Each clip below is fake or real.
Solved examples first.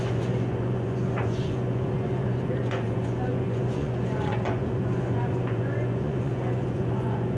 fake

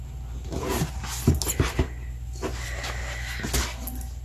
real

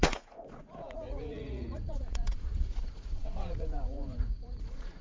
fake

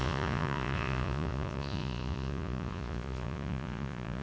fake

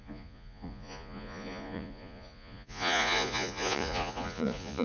fake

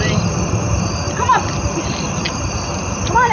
real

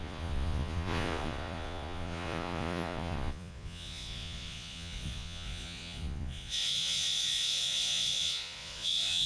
fake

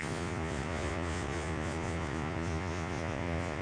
fake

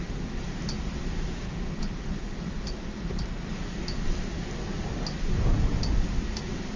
real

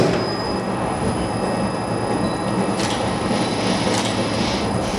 real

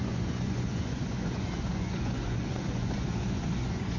fake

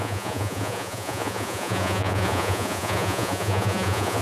fake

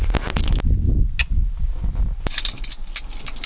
real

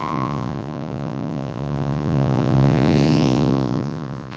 fake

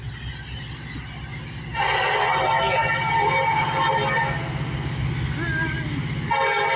real